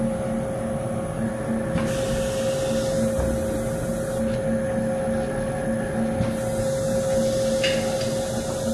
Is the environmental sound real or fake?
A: real